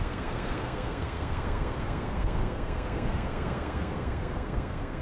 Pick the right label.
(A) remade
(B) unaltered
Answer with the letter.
A